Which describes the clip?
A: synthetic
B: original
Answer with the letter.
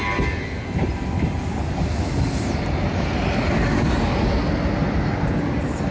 B